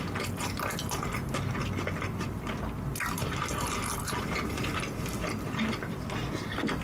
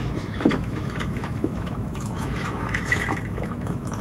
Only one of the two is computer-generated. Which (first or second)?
second